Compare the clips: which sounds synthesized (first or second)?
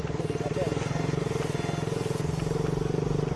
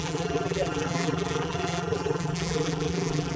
second